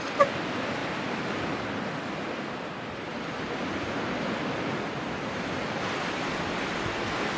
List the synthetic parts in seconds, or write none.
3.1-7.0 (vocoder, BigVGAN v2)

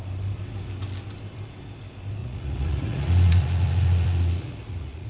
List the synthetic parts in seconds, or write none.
2.2-5.1 (vocoder, Vocos)

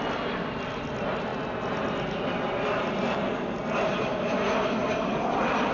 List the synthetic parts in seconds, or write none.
none

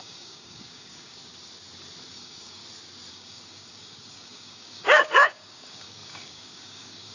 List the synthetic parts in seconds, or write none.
0.0-1.2 (codec, DAC); 2.1-2.6; 3.1-7.1